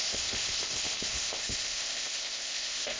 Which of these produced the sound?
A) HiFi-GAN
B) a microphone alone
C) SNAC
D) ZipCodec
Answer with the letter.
D